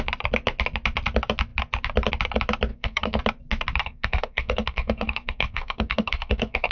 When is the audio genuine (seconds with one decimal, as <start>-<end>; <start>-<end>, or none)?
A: 0.0-2.7; 3.2-3.8